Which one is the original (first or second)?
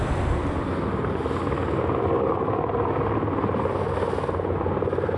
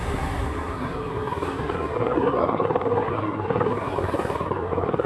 first